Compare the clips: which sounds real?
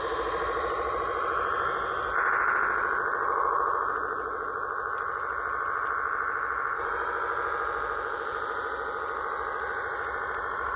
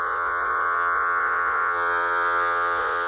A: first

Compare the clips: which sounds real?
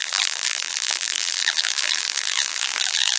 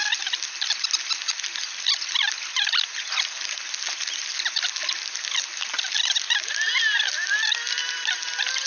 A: second